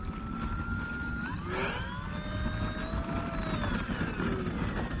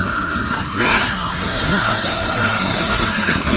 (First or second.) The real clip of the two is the first